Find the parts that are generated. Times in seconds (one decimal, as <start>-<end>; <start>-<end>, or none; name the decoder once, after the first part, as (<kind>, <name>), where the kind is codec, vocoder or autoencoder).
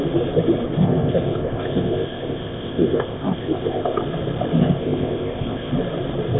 0.8-4.0 (codec, ZipCodec); 4.6-5.7